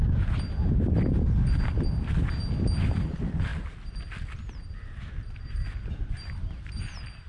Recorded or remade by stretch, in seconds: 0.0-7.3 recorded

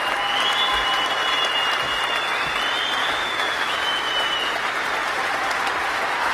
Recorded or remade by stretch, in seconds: 0.0-3.0 recorded; 3.0-4.1 remade; 4.1-6.3 recorded

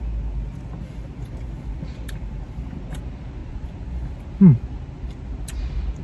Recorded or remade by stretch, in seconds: 0.0-3.4 recorded; 3.4-4.1 remade; 4.1-6.0 recorded